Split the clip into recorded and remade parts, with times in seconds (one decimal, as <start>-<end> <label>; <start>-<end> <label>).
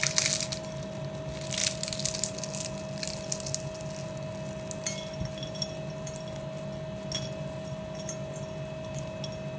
0.0-9.6 recorded